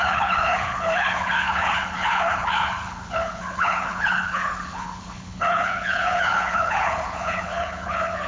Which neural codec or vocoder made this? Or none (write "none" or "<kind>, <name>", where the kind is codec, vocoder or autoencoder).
codec, HILCodec